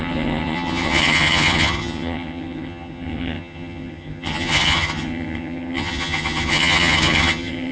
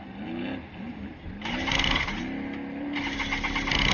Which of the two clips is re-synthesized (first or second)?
first